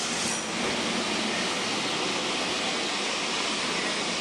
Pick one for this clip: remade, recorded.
recorded